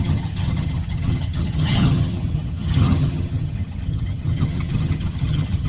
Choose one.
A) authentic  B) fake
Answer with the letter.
B